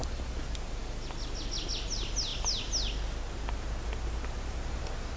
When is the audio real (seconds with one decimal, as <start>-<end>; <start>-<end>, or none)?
0.0-5.2